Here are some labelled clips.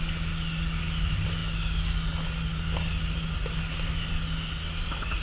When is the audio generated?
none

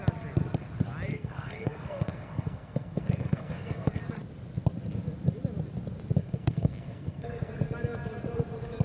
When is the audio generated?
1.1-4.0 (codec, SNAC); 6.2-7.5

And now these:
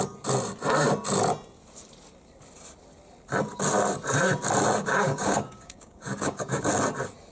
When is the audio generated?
4.8-6.7 (codec, DAC)

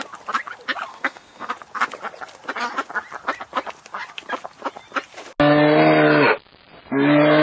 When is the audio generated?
0.9-1.5 (codec, SNAC)

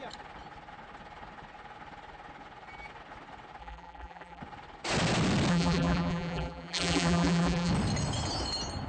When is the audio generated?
3.6-4.4 (vocoder, BigVGAN v2); 5.5-7.7

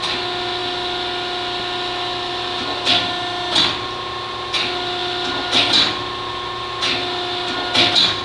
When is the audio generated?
none